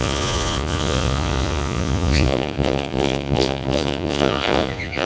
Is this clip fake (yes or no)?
yes